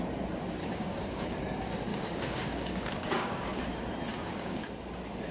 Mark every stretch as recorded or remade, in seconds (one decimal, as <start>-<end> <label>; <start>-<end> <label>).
0.0-0.6 recorded; 0.6-1.4 remade; 1.4-1.9 recorded; 1.9-3.6 remade; 3.6-4.1 recorded; 4.1-4.7 remade; 4.7-5.3 recorded